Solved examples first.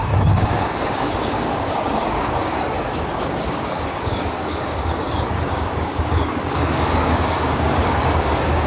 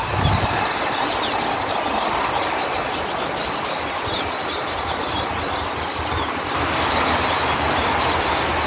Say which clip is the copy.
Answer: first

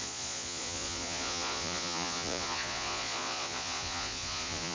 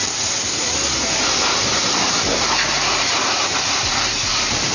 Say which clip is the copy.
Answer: first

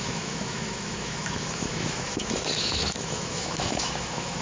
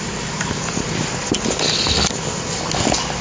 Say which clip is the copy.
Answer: first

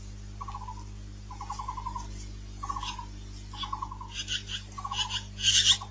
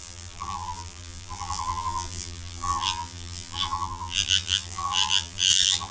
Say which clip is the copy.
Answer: second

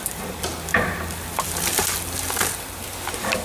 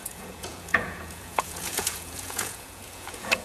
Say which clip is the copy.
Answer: second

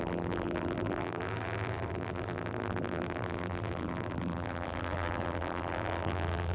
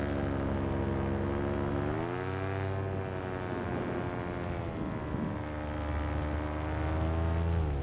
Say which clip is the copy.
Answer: first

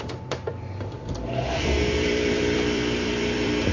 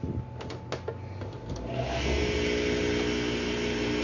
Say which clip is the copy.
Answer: first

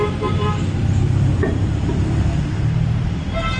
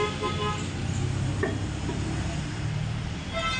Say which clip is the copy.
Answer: first